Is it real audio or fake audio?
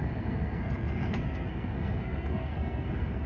fake